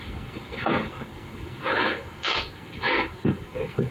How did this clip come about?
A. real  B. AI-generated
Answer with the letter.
B